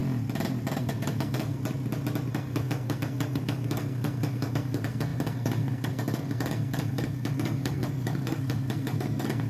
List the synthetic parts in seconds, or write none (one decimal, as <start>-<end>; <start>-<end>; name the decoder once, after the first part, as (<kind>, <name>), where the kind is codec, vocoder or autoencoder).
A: 0.7-1.6 (codec, SNAC); 2.3-9.5